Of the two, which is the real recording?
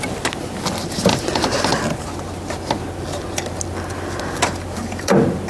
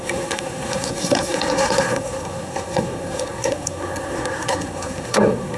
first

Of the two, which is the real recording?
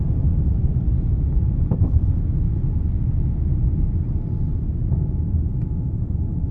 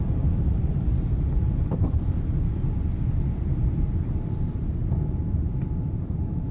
first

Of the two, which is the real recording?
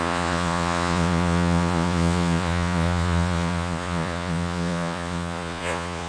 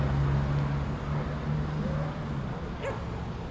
second